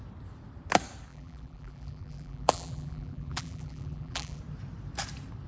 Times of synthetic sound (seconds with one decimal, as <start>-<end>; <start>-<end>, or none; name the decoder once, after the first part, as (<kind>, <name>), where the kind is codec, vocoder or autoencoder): 1.1-4.4 (vocoder, BigVGAN v2)